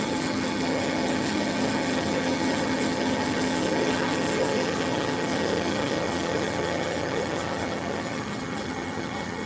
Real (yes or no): no